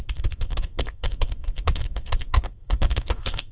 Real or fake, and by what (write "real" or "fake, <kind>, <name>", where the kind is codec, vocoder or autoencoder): fake, codec, SNAC